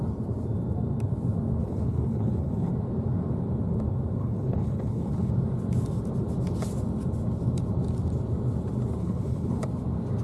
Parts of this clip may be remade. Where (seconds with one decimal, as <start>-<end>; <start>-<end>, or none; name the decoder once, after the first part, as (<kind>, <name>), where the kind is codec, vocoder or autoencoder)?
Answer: 1.6-2.7 (codec, HILCodec); 4.2-5.3; 9.0-9.6